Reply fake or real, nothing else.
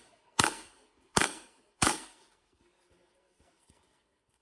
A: fake